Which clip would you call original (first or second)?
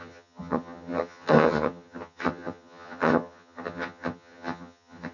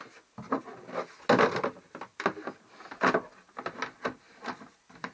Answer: second